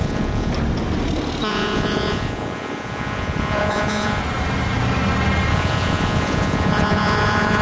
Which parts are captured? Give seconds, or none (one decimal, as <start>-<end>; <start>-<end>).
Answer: 0.5-1.5; 4.2-5.5